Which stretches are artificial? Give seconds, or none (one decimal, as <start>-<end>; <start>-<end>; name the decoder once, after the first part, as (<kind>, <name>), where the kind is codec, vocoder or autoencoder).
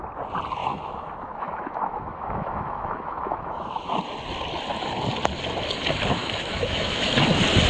0.6-4.0 (autoencoder, DAC-VAE); 6.2-7.1